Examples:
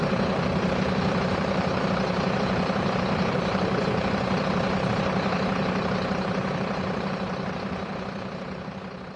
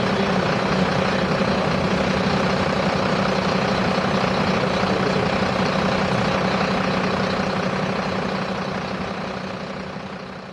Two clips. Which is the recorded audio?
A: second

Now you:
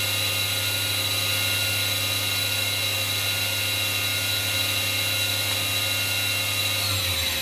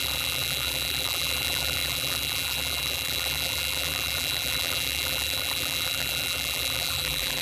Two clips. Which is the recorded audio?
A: first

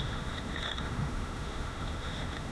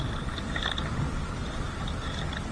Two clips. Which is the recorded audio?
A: second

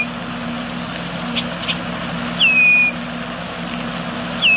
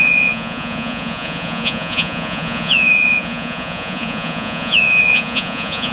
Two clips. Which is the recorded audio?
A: first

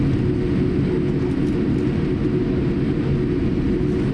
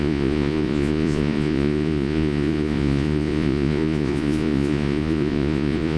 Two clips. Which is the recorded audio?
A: first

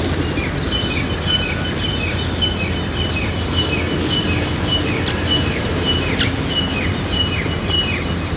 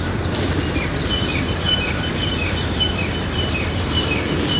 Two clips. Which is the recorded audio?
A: first